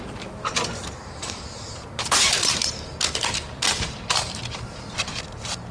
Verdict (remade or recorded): remade